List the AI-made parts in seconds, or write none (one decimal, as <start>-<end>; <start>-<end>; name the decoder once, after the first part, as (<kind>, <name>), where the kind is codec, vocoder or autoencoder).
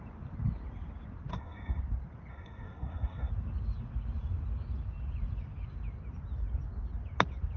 1.3-1.8 (codec, SNAC); 2.3-3.3